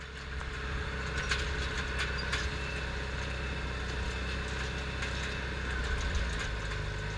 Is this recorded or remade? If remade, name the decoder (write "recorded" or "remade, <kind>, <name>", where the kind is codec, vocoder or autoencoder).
recorded